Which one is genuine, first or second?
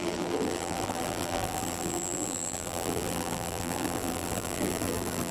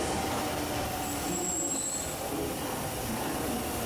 second